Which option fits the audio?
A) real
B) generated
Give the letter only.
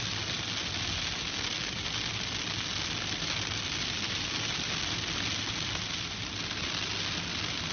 A